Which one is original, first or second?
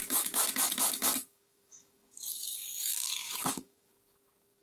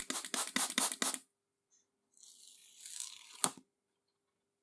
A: second